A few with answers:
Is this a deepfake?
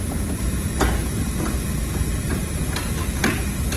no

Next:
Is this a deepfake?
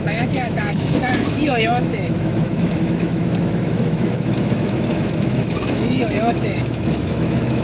yes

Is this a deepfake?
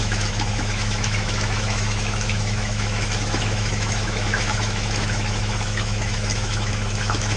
yes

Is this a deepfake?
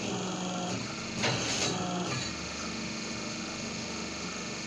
no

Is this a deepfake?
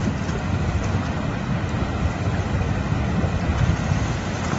no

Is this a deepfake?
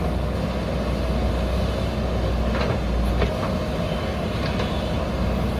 no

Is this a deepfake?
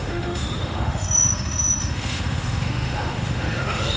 yes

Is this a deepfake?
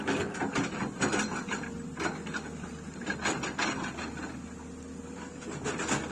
no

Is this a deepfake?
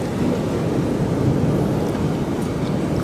no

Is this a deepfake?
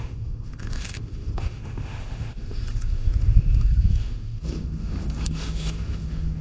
yes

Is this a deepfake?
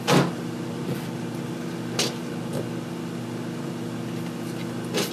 no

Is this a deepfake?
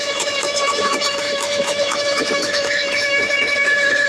yes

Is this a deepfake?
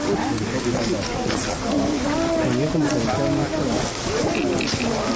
no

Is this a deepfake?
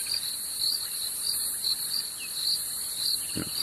no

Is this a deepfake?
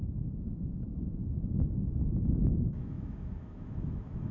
yes